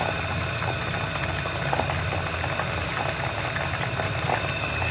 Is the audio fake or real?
real